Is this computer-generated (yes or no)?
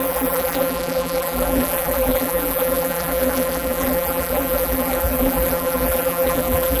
yes